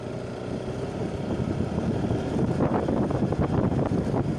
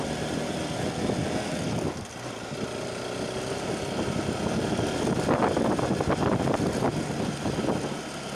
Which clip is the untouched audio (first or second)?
second